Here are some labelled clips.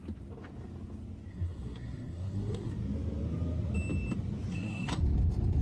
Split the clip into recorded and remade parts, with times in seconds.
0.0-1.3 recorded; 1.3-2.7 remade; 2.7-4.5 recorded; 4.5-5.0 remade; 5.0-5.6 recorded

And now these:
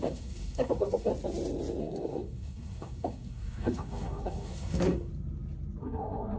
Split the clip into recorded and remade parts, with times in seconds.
0.0-1.1 remade; 1.1-1.8 recorded; 1.8-5.1 remade; 5.1-5.8 recorded; 5.8-6.4 remade

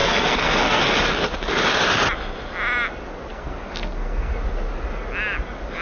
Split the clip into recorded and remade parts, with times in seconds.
0.0-0.8 remade; 0.8-3.3 recorded; 3.3-4.3 remade; 4.3-5.8 recorded